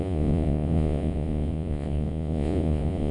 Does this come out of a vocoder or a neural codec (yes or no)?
yes